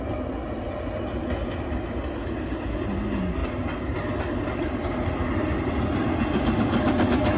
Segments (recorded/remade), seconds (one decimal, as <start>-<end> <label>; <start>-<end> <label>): 0.0-7.4 recorded